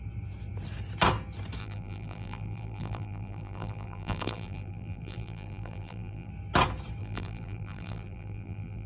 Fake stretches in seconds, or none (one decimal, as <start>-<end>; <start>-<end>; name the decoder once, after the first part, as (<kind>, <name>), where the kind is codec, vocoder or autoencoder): 1.6-6.3 (vocoder, BigVGAN v2); 7.0-8.9